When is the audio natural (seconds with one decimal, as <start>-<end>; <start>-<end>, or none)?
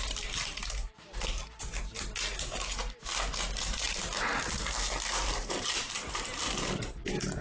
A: 1.4-3.6; 4.0-5.2